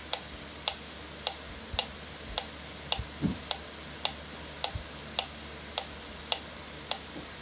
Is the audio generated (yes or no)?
no